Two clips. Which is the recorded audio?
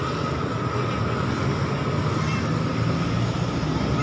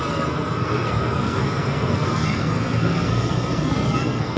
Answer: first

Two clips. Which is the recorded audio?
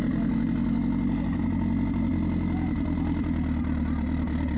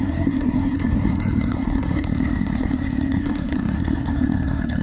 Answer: first